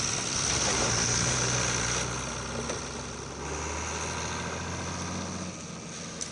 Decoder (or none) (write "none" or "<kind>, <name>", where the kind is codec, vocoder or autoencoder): none